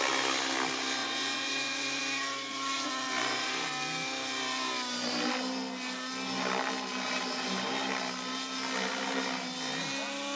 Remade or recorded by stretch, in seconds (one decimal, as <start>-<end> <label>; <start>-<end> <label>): 0.0-1.0 recorded; 1.0-2.0 remade; 2.0-10.4 recorded